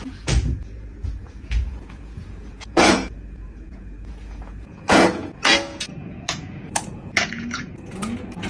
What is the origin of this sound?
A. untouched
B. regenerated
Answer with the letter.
B